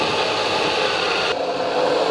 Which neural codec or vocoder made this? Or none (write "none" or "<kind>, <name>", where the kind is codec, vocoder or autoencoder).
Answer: none